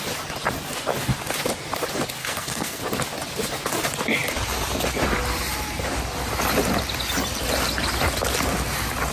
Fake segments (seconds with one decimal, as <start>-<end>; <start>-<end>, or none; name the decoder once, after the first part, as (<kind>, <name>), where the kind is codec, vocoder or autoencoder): 2.2-2.8 (codec, SNAC)